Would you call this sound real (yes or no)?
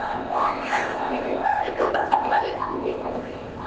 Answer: no